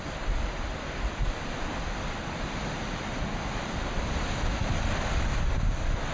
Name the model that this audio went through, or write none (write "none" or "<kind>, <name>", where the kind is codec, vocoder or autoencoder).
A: none